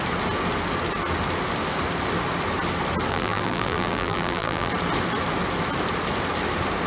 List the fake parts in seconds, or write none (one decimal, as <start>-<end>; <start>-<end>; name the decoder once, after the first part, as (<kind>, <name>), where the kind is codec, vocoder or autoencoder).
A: 3.1-4.7 (vocoder, BigVGAN v2)